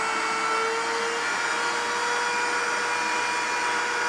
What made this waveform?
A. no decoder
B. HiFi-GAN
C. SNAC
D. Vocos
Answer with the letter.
A